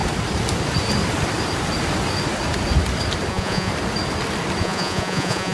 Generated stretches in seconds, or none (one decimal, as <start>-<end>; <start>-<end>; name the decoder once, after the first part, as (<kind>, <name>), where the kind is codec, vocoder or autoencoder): 3.3-3.7 (vocoder, Vocos); 4.6-5.5